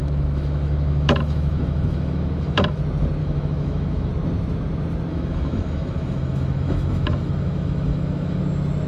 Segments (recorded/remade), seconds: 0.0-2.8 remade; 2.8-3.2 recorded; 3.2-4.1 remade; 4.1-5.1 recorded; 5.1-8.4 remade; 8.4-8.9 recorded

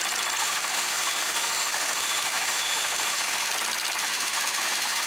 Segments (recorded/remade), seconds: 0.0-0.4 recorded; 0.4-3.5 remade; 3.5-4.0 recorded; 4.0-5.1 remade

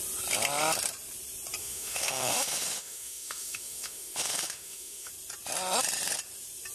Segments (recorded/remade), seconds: 0.0-1.6 recorded; 1.6-5.1 remade; 5.1-6.7 recorded

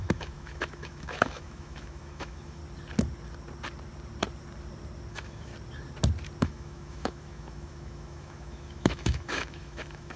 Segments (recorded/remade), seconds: 0.0-2.6 remade; 2.6-5.1 recorded; 5.1-5.5 remade; 5.5-6.4 recorded; 6.4-10.2 remade

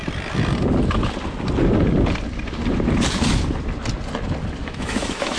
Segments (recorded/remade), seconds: 0.0-4.6 recorded; 4.6-5.4 remade

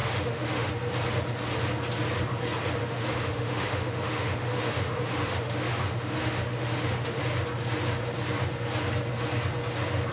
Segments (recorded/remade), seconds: 0.0-0.7 remade; 0.7-2.8 recorded; 2.8-7.2 remade; 7.2-10.1 recorded

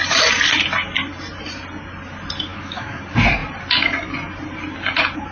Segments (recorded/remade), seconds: 0.0-2.5 recorded; 2.5-3.0 remade; 3.0-5.3 recorded

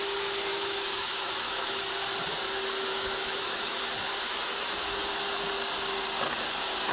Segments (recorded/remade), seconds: 0.0-0.5 recorded; 0.5-1.8 remade; 1.8-2.9 recorded; 2.9-3.8 remade; 3.8-6.9 recorded